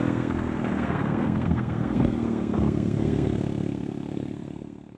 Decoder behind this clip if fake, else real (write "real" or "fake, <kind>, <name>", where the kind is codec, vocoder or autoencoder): fake, codec, SNAC